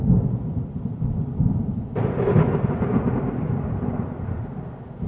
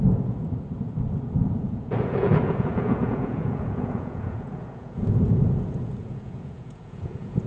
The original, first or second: first